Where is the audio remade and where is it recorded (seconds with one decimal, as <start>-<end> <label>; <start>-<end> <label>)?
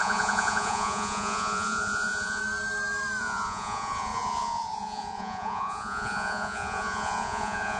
0.0-2.4 remade; 2.4-3.2 recorded; 3.2-7.8 remade